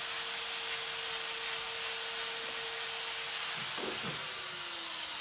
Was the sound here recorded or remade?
recorded